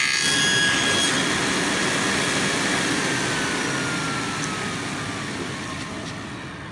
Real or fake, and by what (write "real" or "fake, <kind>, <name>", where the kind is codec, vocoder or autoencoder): real